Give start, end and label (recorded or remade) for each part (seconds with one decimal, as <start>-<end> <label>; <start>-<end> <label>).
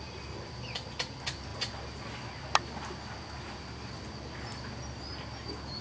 0.0-5.8 recorded